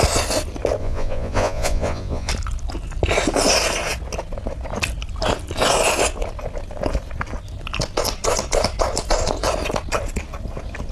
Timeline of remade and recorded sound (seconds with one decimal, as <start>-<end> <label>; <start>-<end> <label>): 0.0-0.8 recorded; 0.8-2.3 remade; 2.3-10.9 recorded